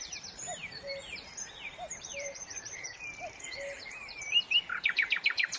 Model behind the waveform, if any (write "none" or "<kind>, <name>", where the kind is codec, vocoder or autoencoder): vocoder, BigVGAN v2